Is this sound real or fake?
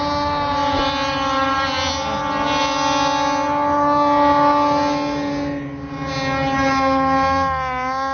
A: real